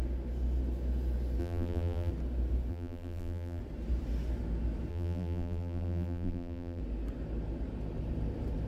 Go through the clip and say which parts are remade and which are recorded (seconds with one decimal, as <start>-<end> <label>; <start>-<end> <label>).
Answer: 0.0-1.4 recorded; 1.4-2.1 remade; 2.1-2.7 recorded; 2.7-3.6 remade; 3.6-4.9 recorded; 4.9-6.8 remade; 6.8-8.7 recorded